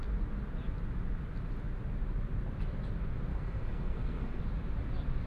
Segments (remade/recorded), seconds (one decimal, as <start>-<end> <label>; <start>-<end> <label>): 0.0-3.3 recorded; 3.3-4.4 remade; 4.4-5.3 recorded